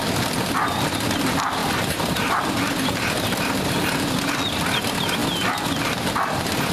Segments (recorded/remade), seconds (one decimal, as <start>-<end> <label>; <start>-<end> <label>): 0.0-1.6 recorded; 1.6-2.4 remade; 2.4-6.7 recorded